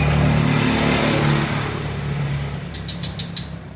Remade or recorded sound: recorded